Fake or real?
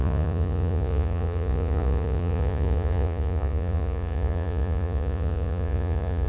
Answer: fake